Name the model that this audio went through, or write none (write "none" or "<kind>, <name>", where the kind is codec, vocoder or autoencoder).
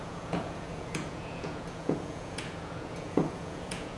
vocoder, Vocos